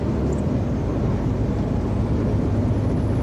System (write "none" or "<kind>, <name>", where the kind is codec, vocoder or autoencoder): none